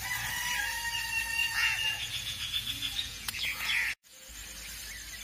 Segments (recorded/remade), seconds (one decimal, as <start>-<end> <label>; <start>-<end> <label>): 0.0-1.4 recorded; 1.4-4.3 remade; 4.3-5.2 recorded